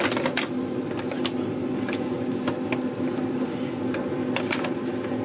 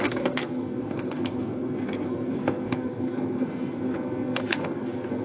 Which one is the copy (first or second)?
second